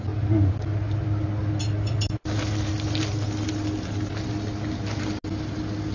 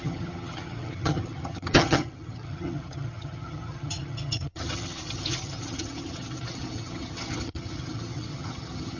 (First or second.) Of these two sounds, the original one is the first